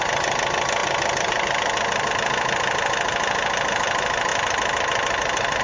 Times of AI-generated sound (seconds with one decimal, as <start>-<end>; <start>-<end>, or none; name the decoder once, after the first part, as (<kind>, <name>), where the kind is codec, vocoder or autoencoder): none